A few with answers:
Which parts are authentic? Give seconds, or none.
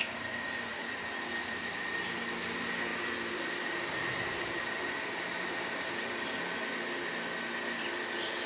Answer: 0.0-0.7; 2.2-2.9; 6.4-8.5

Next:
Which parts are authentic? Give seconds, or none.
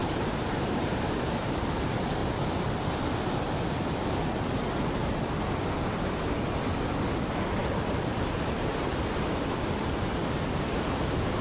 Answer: 1.6-7.6; 9.3-11.4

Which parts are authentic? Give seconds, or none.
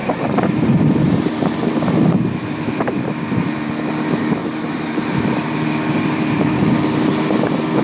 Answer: 3.7-4.4; 6.6-7.8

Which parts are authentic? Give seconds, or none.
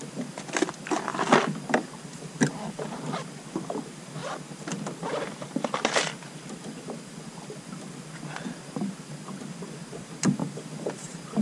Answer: 1.1-2.7